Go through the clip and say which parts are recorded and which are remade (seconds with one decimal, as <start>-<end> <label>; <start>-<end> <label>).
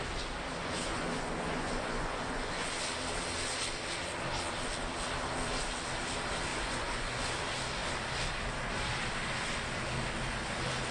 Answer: 0.0-0.6 recorded; 0.6-2.7 remade; 2.7-6.5 recorded; 6.5-7.3 remade; 7.3-10.9 recorded